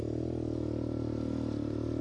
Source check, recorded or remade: recorded